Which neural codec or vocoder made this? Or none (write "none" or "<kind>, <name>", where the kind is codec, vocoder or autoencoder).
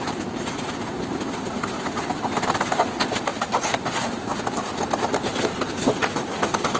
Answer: none